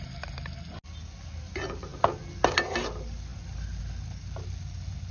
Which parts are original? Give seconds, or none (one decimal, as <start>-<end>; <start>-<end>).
0.0-5.1

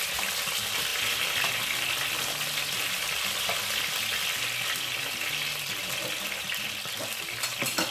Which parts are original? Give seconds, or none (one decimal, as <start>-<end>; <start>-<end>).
0.0-7.9

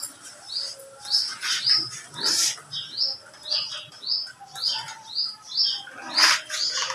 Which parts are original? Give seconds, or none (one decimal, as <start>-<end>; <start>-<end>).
0.0-6.9

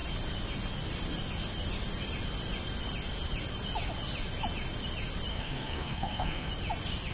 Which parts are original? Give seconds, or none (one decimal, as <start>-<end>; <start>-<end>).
0.0-5.3; 6.5-7.1

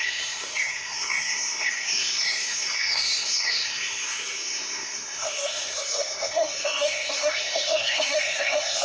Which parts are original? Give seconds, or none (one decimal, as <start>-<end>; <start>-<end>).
none

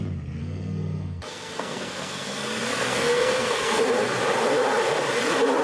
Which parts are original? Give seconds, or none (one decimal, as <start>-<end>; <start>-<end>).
0.0-0.4; 3.8-5.6

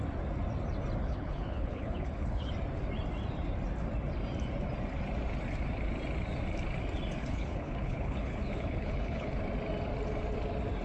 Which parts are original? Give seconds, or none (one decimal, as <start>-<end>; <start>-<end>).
0.0-1.0; 2.5-7.2; 9.3-10.8

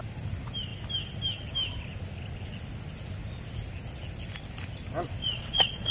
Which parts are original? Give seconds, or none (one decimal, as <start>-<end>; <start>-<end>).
0.0-5.2